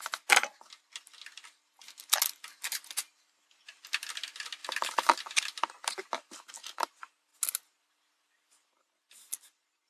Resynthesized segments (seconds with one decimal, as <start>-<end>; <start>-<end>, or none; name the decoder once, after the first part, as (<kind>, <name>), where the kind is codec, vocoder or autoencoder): none